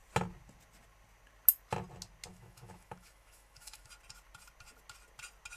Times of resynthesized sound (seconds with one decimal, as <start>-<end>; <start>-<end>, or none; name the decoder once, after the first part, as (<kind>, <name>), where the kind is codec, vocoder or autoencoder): 2.3-3.9 (autoencoder, DAC-VAE)